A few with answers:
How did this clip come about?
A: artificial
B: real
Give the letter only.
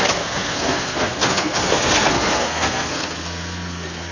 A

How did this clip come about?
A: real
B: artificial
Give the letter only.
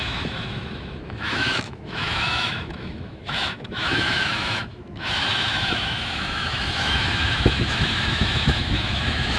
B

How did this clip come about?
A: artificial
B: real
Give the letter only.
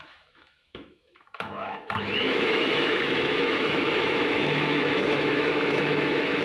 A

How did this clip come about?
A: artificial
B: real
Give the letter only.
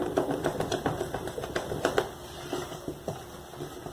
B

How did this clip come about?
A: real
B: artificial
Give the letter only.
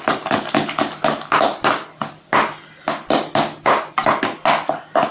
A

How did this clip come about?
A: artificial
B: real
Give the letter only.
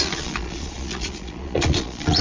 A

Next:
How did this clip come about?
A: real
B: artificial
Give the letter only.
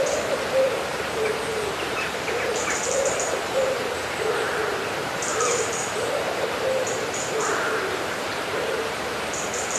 B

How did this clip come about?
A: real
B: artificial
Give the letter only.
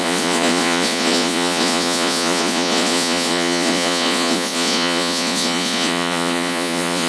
B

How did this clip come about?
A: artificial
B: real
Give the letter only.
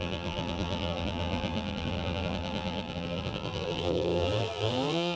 A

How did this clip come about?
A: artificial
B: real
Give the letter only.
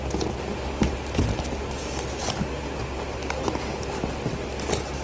B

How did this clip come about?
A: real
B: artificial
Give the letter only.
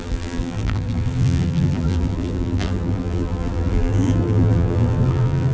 B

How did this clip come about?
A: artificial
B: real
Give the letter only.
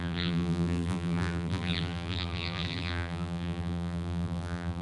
A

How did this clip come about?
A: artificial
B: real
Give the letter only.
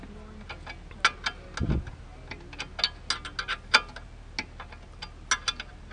B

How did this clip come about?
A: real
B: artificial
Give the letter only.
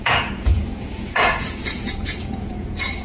B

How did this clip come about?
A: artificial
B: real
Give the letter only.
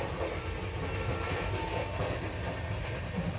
B